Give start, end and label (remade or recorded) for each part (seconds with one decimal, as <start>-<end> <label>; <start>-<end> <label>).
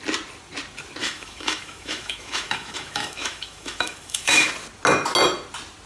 0.0-1.0 recorded; 1.0-4.5 remade; 4.5-5.9 recorded